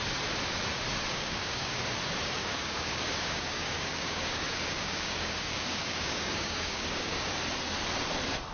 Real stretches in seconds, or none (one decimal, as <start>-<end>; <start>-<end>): 0.0-1.1; 1.8-2.4; 7.3-8.5